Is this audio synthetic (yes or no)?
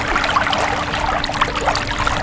yes